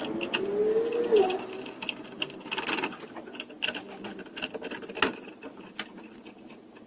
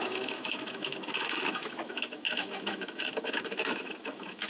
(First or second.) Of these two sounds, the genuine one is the first